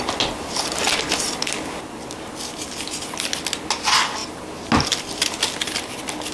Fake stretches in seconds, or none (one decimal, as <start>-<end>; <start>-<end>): none